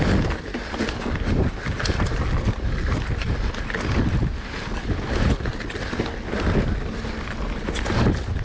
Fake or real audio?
real